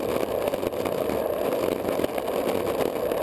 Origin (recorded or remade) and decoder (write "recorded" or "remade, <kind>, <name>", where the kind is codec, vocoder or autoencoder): recorded